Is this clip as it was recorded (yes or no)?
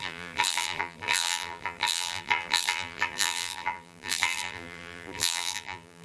no